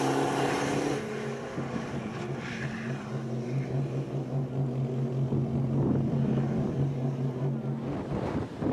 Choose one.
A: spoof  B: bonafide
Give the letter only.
B